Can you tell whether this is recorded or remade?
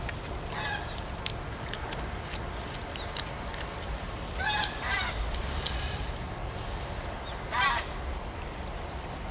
recorded